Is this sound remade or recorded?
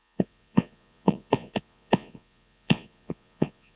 remade